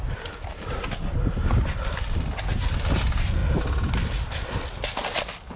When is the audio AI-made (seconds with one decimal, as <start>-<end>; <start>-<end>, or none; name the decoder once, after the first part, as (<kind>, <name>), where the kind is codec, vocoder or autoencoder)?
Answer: none